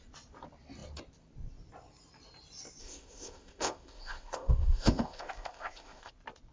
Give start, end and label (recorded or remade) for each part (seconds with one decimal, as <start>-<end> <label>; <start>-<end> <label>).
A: 0.0-2.8 recorded; 2.8-6.1 remade; 6.1-6.5 recorded